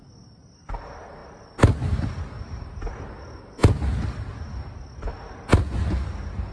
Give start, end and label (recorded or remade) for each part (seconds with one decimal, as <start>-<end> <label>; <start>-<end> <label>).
0.0-6.5 recorded

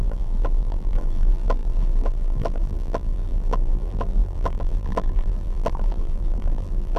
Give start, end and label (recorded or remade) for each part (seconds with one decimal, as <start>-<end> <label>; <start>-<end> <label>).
0.0-7.0 remade

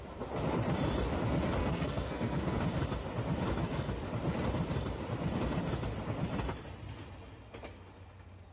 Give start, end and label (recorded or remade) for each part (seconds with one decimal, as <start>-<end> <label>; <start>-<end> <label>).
0.0-1.6 recorded; 1.6-2.6 remade; 2.6-8.5 recorded

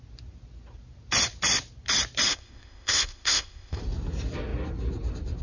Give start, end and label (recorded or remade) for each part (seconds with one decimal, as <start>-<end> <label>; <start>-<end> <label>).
0.0-2.3 recorded; 2.3-3.8 remade; 3.8-5.4 recorded

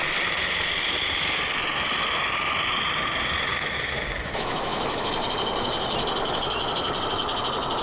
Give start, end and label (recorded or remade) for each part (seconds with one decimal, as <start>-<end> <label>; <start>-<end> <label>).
0.0-3.5 recorded; 3.5-5.1 remade; 5.1-7.8 recorded

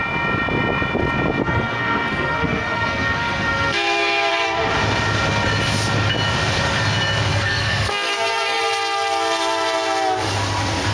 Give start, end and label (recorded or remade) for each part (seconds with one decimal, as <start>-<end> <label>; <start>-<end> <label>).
0.0-1.4 recorded; 1.4-4.3 remade; 4.3-7.3 recorded; 7.3-8.6 remade; 8.6-10.9 recorded

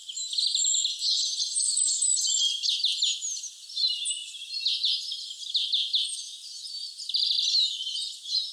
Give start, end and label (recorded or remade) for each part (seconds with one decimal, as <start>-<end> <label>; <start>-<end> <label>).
0.0-8.5 recorded